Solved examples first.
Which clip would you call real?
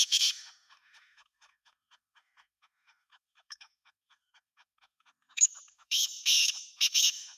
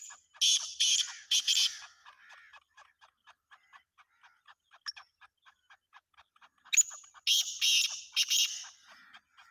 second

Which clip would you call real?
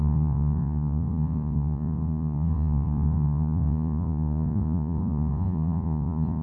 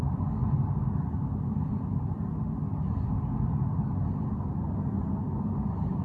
second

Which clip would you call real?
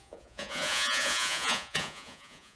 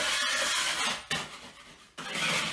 second